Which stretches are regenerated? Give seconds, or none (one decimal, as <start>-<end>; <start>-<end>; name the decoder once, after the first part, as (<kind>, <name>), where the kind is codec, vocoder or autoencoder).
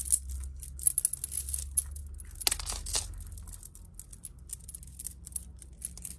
none